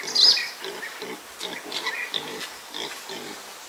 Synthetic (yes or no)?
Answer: no